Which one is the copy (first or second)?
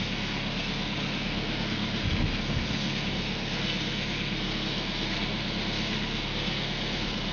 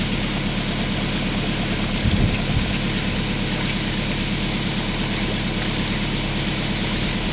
first